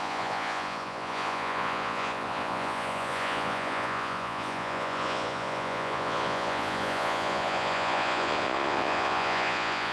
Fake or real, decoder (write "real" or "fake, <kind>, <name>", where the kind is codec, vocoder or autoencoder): fake, vocoder, Vocos